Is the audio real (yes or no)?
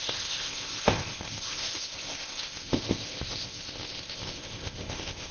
no